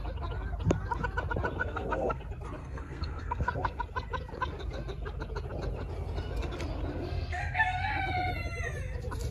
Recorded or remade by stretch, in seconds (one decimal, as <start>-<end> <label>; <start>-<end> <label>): 0.0-1.6 recorded; 1.6-2.2 remade; 2.2-2.6 recorded; 2.6-3.8 remade; 3.8-6.9 recorded; 6.9-7.9 remade; 7.9-9.3 recorded